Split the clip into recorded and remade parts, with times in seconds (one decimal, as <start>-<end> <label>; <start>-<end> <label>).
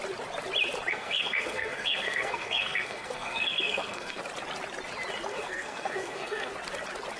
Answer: 0.0-0.9 recorded; 0.9-4.2 remade; 4.2-5.3 recorded; 5.3-6.5 remade; 6.5-7.2 recorded